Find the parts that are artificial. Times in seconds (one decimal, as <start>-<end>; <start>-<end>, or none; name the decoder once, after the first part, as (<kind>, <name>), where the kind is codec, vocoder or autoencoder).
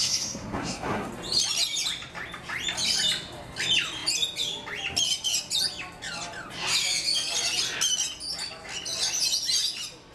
0.0-1.1 (codec, SNAC)